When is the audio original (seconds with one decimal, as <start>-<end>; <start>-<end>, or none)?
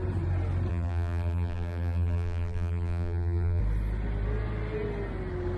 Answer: 0.0-0.7; 3.6-5.6